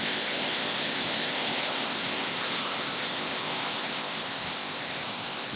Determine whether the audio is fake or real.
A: fake